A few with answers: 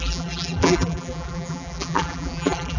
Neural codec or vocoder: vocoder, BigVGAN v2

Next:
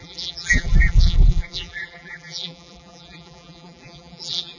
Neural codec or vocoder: vocoder, BigVGAN v2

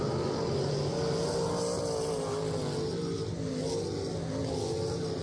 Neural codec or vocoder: none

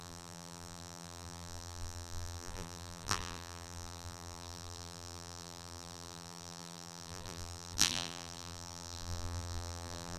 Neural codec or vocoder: vocoder, BigVGAN v2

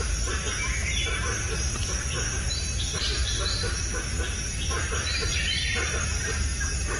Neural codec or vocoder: none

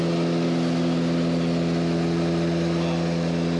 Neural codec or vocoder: none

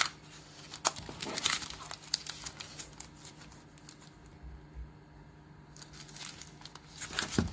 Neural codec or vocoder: none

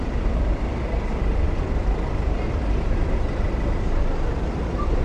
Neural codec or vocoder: vocoder, BigVGAN v2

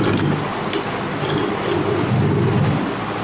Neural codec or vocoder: none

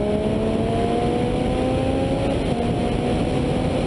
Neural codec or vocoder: none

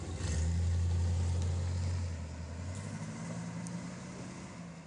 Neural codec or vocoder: none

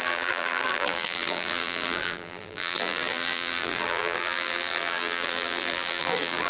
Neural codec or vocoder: vocoder, BigVGAN v2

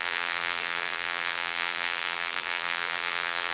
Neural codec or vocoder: vocoder, BigVGAN v2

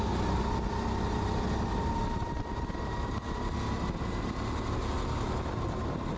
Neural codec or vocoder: none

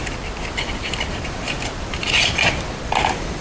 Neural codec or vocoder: vocoder, BigVGAN v2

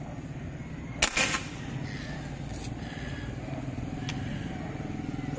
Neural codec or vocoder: none